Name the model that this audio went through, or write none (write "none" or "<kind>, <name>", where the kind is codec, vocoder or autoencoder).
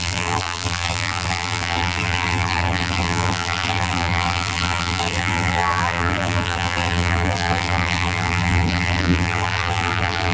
vocoder, BigVGAN v2